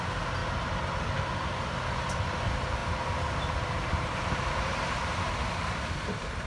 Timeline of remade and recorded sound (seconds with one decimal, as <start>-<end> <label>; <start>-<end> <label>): 0.0-2.8 recorded; 2.8-5.4 remade; 5.4-6.5 recorded